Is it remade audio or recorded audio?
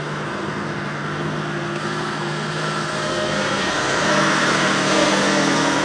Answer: remade